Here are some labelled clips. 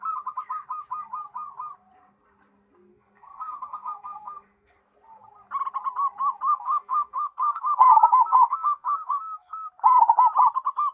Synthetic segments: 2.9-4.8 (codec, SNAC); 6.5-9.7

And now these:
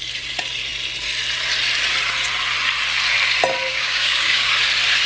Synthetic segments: 3.7-4.5 (codec, DAC)

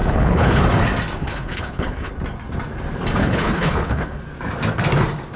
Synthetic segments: 0.0-0.6 (codec, HILCodec); 1.2-2.1; 3.2-4.2

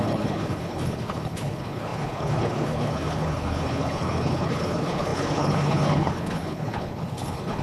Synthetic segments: 0.0-7.6 (codec, HILCodec)

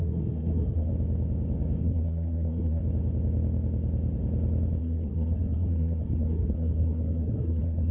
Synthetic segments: 0.0-0.9 (codec, SNAC); 1.8-2.8; 4.8-7.9